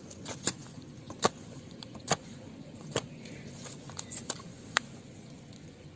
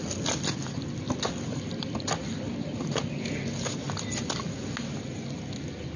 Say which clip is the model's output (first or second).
first